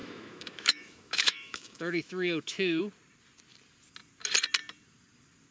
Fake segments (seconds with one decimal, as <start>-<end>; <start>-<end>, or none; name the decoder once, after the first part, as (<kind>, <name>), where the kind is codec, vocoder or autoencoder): 0.0-2.8 (autoencoder, DAC-VAE)